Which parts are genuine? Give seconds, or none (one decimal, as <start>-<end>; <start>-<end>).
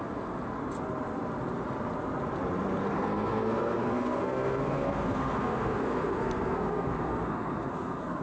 0.0-3.0